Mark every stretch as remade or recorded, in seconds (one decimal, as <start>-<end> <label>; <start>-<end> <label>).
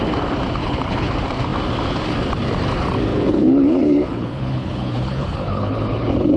0.0-0.6 recorded; 0.6-1.1 remade; 1.1-3.1 recorded; 3.1-6.4 remade